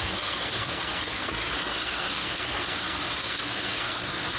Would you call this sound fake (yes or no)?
yes